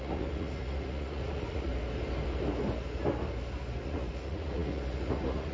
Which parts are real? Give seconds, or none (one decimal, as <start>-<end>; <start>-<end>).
1.7-3.8